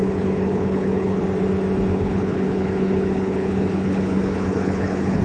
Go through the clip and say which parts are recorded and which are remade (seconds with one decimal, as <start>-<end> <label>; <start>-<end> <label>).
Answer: 0.0-1.2 remade; 1.2-1.9 recorded; 1.9-5.2 remade